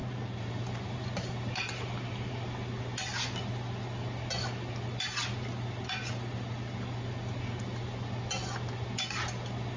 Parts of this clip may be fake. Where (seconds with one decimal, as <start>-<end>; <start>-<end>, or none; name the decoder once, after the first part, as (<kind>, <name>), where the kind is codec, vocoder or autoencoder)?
0.0-2.5 (vocoder, BigVGAN v2)